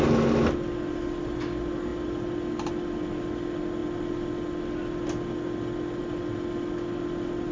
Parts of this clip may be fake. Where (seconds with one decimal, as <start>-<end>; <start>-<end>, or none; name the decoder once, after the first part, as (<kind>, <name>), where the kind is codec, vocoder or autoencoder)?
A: none